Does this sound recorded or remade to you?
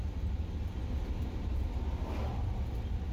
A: recorded